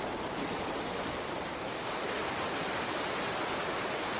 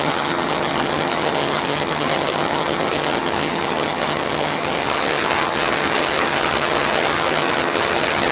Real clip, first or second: first